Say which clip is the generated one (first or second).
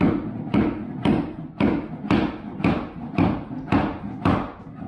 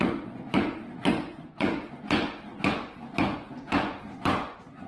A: second